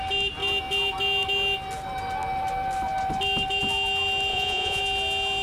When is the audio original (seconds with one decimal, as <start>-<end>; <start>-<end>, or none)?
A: 0.0-4.3; 4.8-5.4